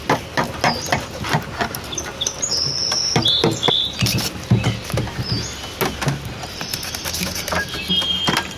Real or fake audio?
real